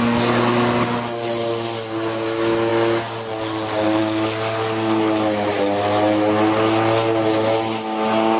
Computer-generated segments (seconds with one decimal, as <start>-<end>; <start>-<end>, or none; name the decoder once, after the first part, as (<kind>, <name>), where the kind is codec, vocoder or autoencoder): none